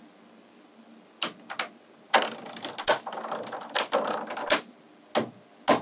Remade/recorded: recorded